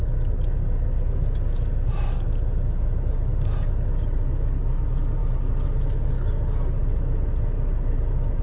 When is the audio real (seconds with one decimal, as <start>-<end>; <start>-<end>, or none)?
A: 0.0-8.4

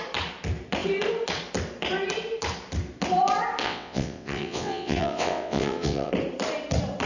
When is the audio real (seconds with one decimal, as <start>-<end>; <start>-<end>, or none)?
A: 0.0-3.6; 6.1-7.1

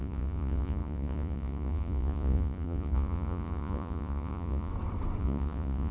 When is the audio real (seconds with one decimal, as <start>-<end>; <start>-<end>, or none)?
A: 4.7-5.2